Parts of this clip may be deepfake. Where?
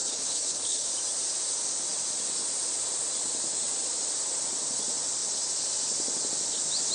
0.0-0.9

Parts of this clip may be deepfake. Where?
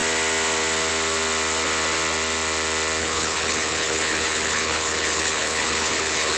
3.0-6.4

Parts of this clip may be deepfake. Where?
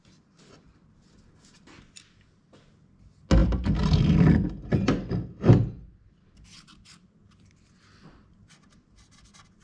none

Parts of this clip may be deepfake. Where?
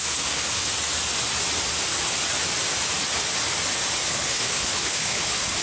0.0-0.7; 4.1-5.6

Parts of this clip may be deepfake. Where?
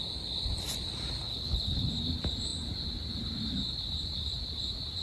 1.3-1.9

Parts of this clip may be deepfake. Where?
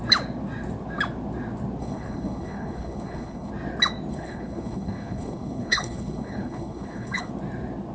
1.8-3.5; 4.1-7.3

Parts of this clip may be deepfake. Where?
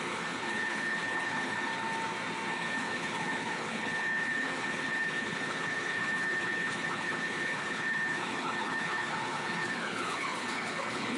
0.0-1.7; 2.5-11.2